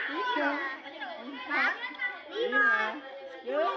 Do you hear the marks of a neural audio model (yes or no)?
no